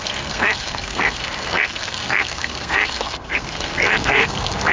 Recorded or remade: remade